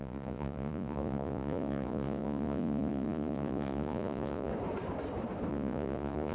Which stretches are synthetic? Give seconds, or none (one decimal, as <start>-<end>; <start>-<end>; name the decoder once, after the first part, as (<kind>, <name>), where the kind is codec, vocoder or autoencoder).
0.0-4.5 (vocoder, Vocos); 5.5-6.3